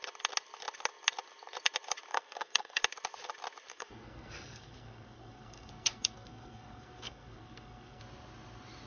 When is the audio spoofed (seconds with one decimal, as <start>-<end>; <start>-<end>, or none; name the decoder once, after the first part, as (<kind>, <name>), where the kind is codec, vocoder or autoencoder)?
2.1-2.8 (codec, SNAC); 3.7-8.0